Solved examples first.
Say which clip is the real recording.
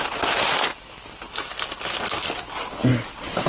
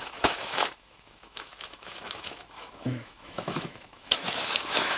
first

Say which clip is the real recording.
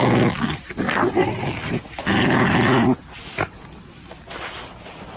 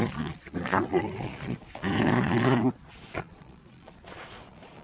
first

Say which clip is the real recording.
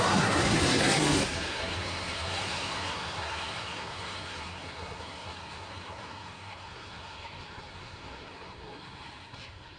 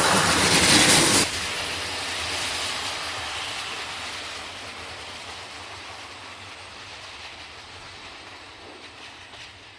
second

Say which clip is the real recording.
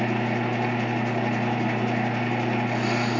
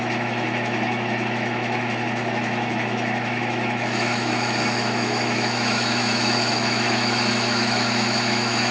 first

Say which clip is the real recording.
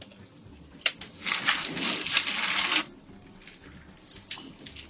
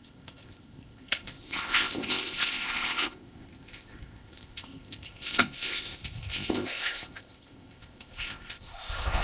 first